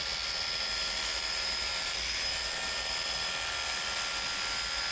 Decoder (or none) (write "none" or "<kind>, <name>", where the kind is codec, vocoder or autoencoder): none